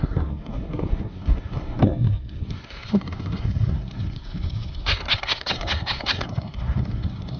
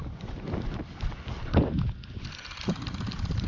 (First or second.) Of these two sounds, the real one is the second